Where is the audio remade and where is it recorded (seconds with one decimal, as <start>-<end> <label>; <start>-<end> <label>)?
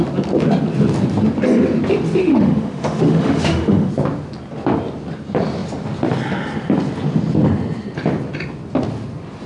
0.0-2.2 recorded; 2.2-3.9 remade; 3.9-9.5 recorded